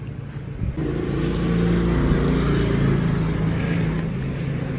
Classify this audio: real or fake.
real